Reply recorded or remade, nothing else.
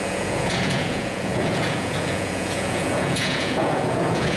remade